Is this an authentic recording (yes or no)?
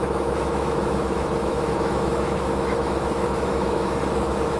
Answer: no